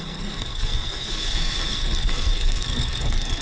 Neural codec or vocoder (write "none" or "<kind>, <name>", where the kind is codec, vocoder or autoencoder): codec, SNAC